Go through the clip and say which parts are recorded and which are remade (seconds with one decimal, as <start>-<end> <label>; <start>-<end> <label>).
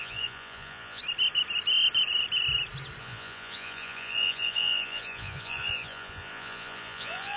0.0-1.0 remade; 1.0-3.0 recorded; 3.0-7.4 remade